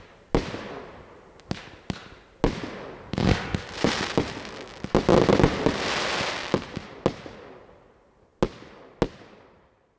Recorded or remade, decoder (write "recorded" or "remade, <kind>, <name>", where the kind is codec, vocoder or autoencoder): recorded